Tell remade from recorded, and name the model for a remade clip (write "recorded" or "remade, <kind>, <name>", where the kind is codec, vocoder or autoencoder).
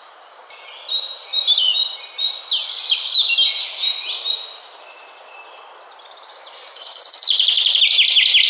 recorded